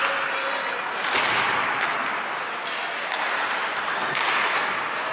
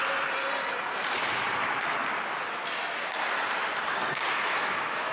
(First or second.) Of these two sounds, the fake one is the second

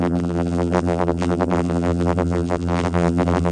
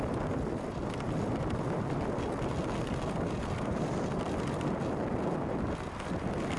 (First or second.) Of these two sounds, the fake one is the first